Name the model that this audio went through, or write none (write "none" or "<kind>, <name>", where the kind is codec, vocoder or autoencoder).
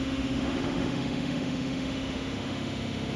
autoencoder, DAC-VAE